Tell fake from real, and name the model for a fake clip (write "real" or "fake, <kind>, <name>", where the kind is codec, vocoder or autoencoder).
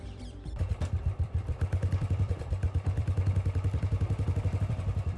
fake, vocoder, BigVGAN v2